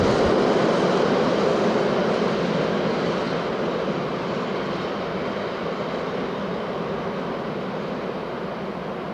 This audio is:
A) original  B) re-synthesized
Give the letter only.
A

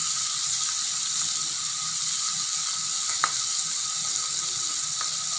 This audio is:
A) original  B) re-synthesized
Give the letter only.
A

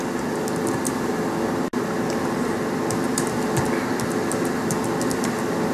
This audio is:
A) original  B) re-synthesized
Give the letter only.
A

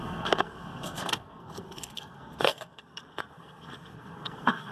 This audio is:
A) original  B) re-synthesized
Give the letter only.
B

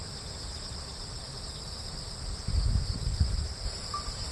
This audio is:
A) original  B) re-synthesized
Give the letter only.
A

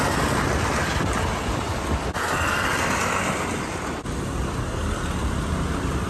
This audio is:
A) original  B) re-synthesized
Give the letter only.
A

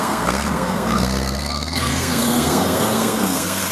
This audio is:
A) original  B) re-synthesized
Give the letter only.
B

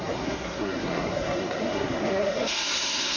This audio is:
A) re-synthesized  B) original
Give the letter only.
A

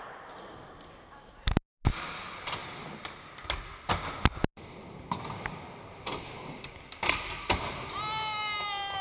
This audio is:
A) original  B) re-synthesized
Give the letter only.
A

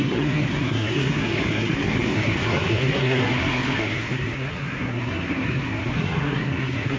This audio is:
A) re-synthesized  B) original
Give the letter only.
A